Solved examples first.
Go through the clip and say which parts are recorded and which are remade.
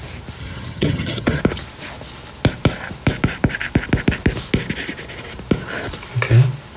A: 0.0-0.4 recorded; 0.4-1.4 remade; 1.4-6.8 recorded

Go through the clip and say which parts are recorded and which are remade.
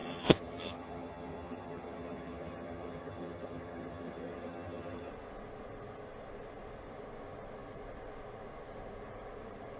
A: 0.0-5.1 remade; 5.1-9.8 recorded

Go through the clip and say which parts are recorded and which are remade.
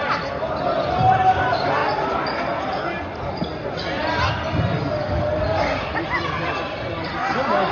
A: 0.0-7.7 recorded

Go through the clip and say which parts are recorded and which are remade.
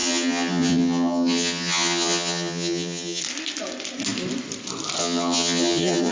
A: 0.0-3.2 remade; 3.2-5.0 recorded; 5.0-6.1 remade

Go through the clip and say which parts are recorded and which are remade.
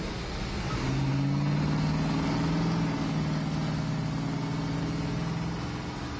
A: 0.0-6.2 recorded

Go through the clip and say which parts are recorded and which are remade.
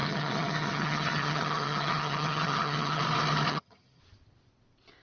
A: 0.0-3.0 remade; 3.0-3.5 recorded; 3.5-4.0 remade; 4.0-5.0 recorded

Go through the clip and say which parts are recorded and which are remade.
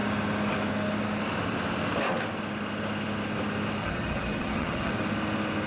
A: 0.0-3.8 recorded; 3.8-4.9 remade; 4.9-5.7 recorded